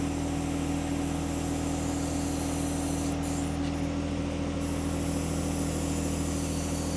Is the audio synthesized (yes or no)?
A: no